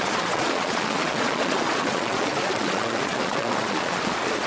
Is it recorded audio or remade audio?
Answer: remade